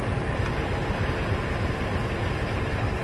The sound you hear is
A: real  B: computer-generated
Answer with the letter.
A